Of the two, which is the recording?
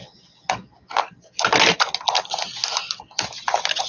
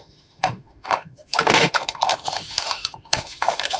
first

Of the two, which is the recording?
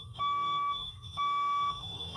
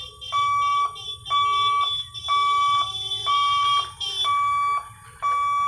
second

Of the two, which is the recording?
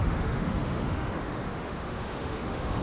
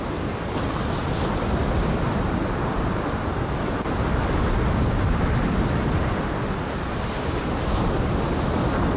second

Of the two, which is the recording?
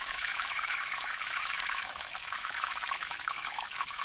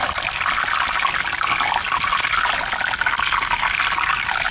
second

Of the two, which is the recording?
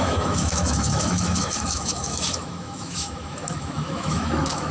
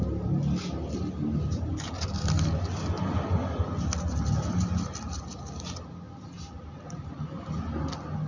second